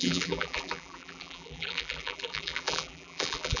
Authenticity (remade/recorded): remade